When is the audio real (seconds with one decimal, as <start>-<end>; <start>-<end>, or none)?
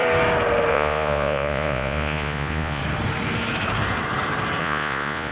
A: 0.0-0.7; 2.8-4.6